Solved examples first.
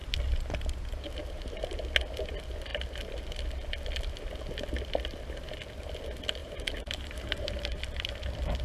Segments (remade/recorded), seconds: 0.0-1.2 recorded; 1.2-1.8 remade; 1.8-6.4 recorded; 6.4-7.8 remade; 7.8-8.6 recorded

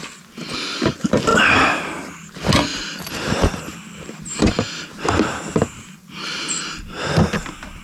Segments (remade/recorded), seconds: 0.0-2.7 recorded; 2.7-7.1 remade; 7.1-7.8 recorded

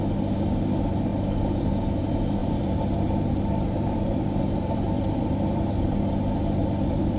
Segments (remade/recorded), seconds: 0.0-1.1 recorded; 1.1-1.7 remade; 1.7-2.4 recorded; 2.4-5.9 remade; 5.9-6.6 recorded; 6.6-7.2 remade

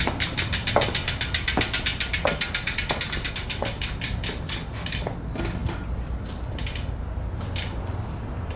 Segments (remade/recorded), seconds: 0.0-8.6 recorded

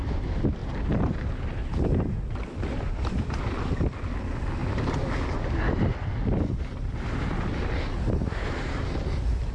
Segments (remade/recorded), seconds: 0.0-0.6 recorded; 0.6-1.9 remade; 1.9-9.5 recorded